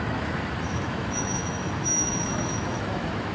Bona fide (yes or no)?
no